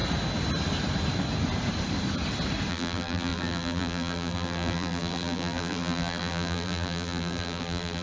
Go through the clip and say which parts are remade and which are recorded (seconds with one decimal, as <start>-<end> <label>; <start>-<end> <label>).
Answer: 0.0-2.7 recorded; 2.7-8.0 remade